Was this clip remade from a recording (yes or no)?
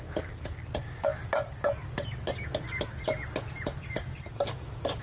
no